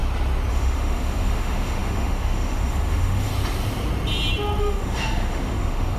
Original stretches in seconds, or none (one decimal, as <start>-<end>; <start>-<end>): 0.0-0.5; 3.3-4.6